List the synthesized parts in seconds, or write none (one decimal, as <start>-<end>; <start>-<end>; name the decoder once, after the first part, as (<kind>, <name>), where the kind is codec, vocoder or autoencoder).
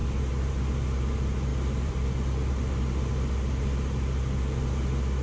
1.5-2.5 (vocoder, BigVGAN v2)